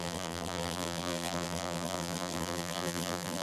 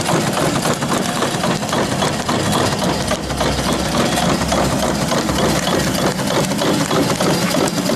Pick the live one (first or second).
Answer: second